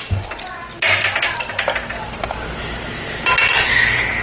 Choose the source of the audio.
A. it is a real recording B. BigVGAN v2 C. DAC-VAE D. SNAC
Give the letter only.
A